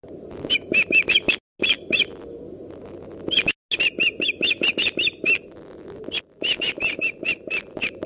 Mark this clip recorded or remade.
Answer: recorded